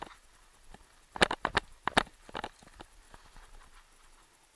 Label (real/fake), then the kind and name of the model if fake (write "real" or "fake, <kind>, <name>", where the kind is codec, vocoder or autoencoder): real